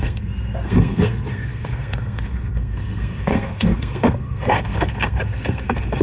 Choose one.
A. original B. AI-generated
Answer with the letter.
B